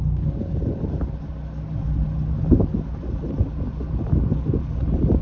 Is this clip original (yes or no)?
yes